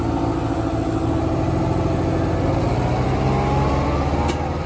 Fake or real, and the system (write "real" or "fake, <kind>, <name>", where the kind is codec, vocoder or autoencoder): real